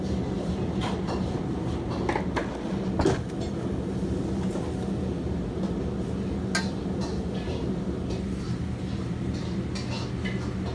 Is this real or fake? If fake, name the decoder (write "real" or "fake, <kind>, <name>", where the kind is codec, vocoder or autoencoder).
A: real